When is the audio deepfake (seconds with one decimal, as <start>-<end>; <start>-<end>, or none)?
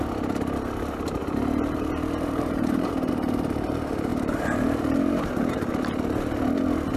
1.2-3.1; 4.1-5.7